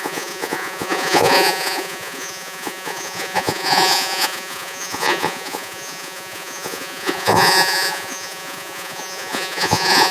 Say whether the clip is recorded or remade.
remade